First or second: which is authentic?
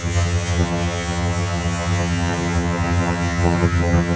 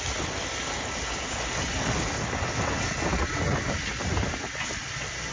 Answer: second